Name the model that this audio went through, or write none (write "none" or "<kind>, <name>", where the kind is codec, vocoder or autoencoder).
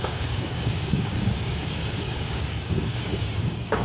codec, DAC